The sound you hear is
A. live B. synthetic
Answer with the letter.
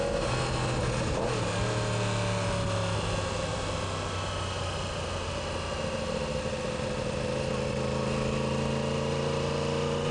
A